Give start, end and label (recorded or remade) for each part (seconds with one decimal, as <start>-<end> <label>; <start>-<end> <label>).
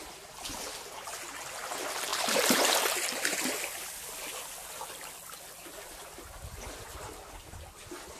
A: 0.0-2.1 recorded; 2.1-3.4 remade; 3.4-8.2 recorded